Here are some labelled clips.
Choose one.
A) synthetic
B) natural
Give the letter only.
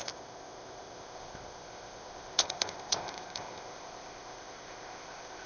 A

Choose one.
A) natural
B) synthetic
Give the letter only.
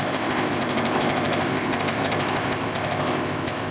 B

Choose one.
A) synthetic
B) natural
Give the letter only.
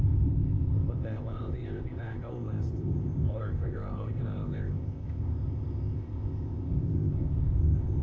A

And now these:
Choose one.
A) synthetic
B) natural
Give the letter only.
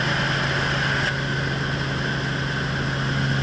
B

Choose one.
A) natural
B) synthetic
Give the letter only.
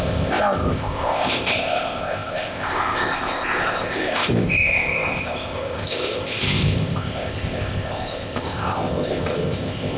B